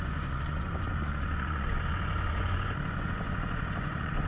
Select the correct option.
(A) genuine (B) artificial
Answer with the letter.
B